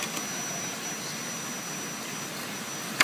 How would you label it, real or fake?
real